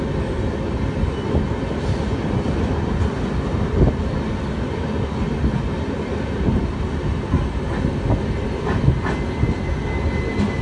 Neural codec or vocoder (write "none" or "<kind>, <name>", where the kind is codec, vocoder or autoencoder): none